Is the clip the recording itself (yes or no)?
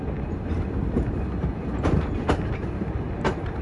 yes